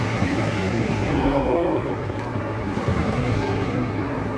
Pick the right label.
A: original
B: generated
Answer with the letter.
B